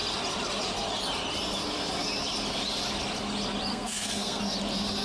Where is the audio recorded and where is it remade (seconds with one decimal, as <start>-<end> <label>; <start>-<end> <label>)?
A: 0.0-3.7 recorded; 3.7-4.4 remade; 4.4-5.0 recorded